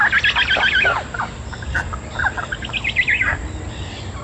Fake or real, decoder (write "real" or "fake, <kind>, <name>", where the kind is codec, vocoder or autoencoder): real